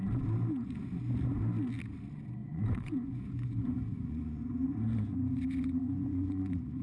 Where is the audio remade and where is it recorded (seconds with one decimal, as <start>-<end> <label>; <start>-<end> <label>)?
0.0-2.4 recorded; 2.4-6.8 remade